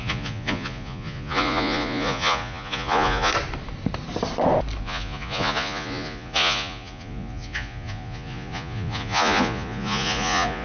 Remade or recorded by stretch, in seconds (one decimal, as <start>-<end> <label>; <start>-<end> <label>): 0.0-3.3 remade; 3.3-4.8 recorded; 4.8-10.6 remade